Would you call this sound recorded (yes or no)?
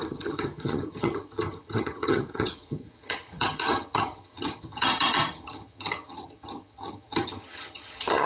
no